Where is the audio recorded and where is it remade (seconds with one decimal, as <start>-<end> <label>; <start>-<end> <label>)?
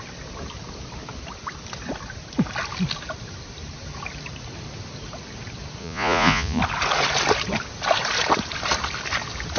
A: 0.0-5.8 recorded; 5.8-6.6 remade; 6.6-9.6 recorded